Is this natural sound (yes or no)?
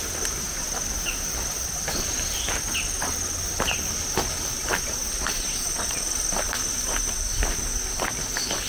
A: yes